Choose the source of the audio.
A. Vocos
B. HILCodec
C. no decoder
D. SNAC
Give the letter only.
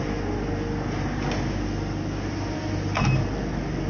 C